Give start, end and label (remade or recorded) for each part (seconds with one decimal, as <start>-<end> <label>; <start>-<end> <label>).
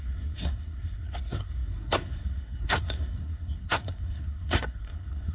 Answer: 0.0-5.3 remade